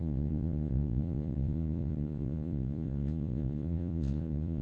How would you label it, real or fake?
fake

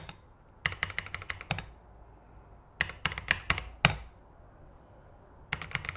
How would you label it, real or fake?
real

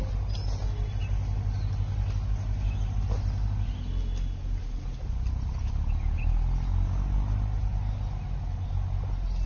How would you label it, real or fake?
real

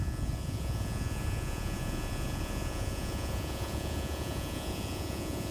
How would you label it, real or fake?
fake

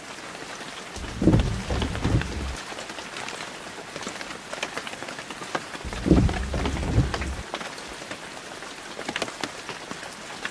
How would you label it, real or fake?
real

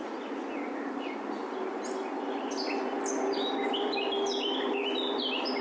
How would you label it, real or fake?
real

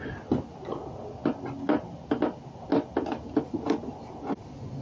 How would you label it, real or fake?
real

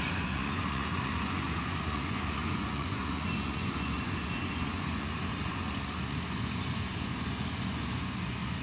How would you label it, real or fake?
fake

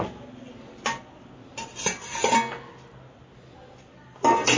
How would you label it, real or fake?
real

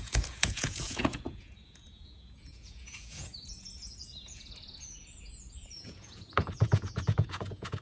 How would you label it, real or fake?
fake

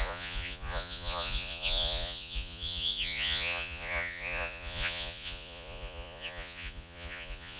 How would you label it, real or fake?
fake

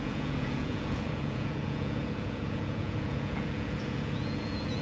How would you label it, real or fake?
fake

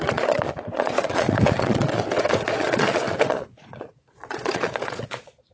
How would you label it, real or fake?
fake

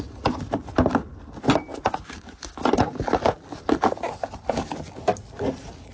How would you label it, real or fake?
real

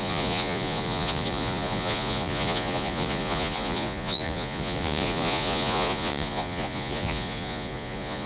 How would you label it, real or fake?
fake